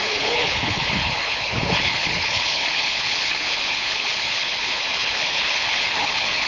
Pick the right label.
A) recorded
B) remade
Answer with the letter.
B